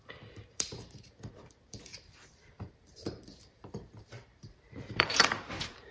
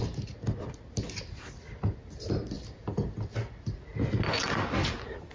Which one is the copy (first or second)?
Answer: first